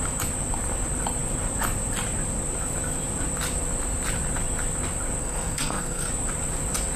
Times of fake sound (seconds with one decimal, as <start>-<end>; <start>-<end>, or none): 5.2-6.1